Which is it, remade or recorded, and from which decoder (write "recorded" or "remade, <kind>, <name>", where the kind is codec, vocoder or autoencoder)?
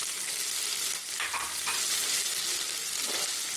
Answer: remade, vocoder, BigVGAN v2